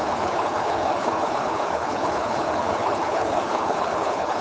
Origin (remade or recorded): remade